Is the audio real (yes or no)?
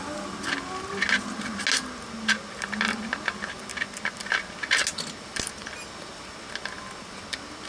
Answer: yes